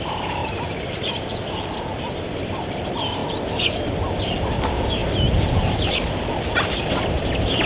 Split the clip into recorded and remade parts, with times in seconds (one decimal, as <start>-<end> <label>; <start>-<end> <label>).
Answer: 0.0-7.7 recorded